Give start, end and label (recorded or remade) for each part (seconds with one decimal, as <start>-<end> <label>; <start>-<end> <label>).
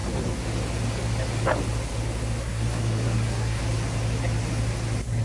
0.0-2.4 recorded; 2.4-3.6 remade; 3.6-5.2 recorded